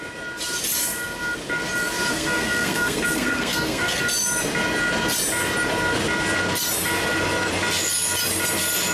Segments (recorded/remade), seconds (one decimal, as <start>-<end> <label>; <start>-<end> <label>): 0.0-2.1 recorded; 2.1-4.0 remade; 4.0-8.9 recorded